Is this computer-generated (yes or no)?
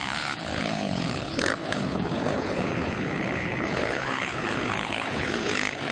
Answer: yes